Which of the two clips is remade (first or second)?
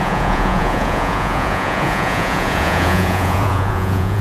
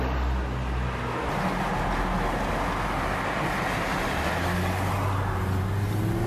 first